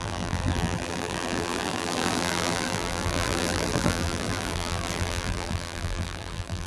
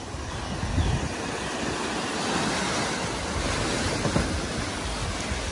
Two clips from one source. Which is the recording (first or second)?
second